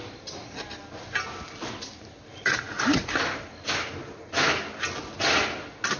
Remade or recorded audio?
recorded